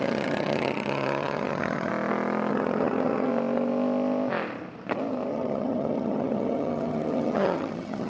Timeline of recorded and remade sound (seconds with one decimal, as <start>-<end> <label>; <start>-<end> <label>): 0.0-1.9 remade; 1.9-2.5 recorded; 2.5-3.3 remade; 3.3-5.3 recorded; 5.3-8.1 remade